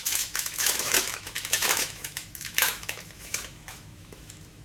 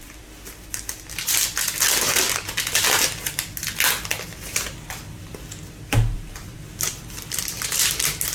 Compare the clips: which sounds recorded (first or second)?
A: second